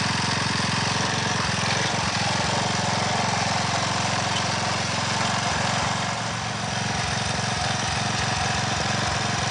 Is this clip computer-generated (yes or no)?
no